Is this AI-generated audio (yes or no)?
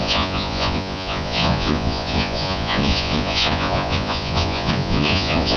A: yes